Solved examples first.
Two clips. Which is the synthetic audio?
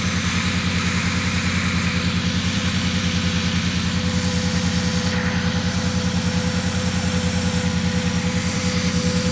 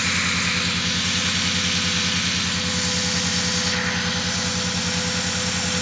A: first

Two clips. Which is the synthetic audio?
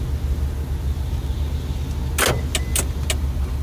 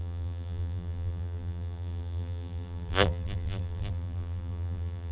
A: second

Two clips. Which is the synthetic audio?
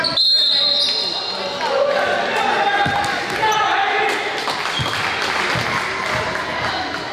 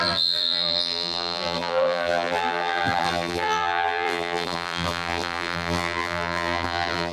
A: second